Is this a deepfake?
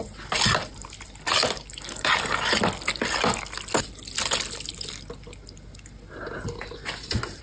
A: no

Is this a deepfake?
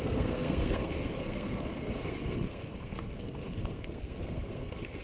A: yes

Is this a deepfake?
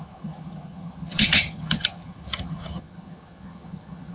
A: yes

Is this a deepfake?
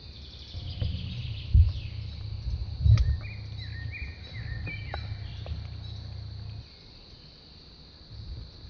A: no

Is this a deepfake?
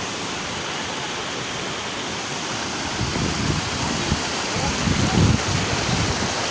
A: no